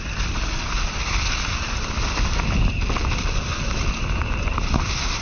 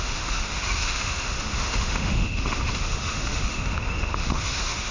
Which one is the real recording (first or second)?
first